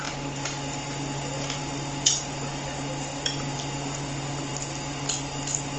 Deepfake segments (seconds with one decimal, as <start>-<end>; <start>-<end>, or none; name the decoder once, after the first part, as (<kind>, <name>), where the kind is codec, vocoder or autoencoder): none